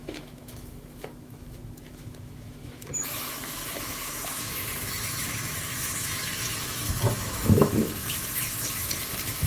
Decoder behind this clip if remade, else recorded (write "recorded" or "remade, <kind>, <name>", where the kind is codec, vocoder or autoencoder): remade, autoencoder, DAC-VAE